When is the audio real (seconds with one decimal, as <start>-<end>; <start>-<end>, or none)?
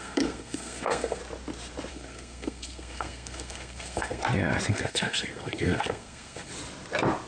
1.2-1.9; 4.2-4.7; 6.5-7.3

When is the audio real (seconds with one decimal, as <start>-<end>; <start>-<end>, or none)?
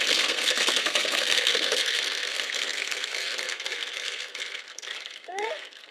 none